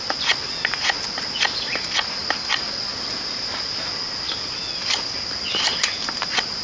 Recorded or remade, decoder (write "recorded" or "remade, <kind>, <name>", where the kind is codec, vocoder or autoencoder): recorded